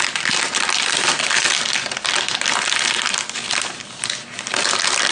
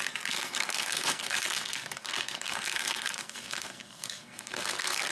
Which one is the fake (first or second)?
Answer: second